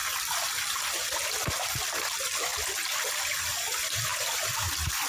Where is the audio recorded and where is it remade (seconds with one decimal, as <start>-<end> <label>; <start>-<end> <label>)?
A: 0.0-0.8 remade; 0.8-5.1 recorded